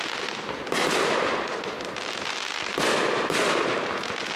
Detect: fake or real real